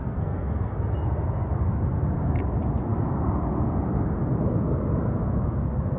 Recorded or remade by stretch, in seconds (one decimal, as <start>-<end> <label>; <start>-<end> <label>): 0.0-0.8 remade; 0.8-6.0 recorded